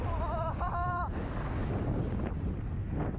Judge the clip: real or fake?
real